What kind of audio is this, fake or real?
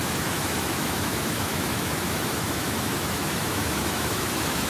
fake